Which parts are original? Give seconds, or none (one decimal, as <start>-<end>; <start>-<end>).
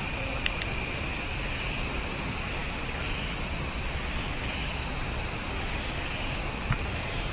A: 0.0-7.3